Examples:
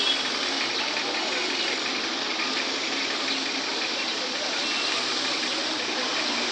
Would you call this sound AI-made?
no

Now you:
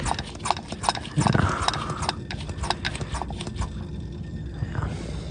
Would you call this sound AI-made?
no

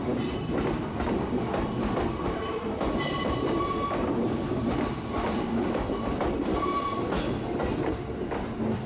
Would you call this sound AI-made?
no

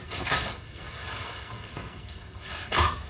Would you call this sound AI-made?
yes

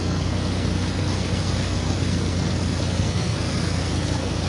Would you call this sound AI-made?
yes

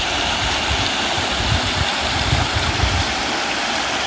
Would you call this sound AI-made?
no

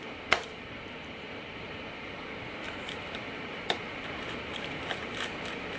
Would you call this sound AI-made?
yes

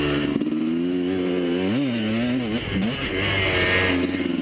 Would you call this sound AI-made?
no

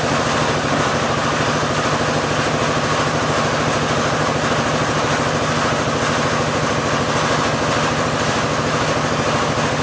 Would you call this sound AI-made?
no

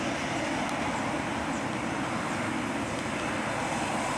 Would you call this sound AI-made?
no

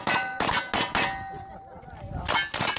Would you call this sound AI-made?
no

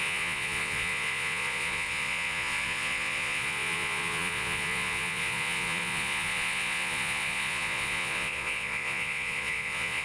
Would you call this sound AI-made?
yes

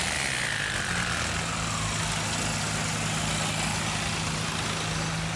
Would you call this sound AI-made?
no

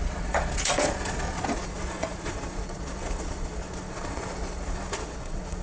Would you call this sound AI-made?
yes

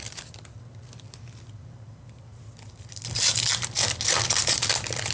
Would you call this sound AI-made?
no